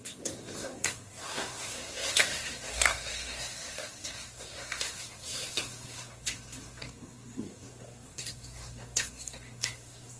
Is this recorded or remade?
remade